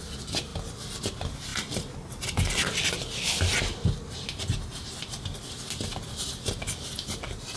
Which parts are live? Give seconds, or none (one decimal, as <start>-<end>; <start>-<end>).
0.0-7.6